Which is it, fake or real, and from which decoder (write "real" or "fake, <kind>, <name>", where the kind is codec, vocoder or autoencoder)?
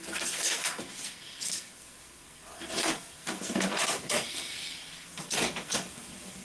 fake, codec, SNAC